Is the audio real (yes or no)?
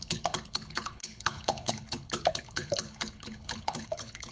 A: no